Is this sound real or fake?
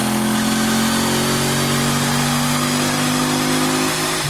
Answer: real